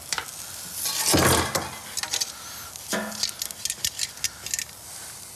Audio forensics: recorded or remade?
recorded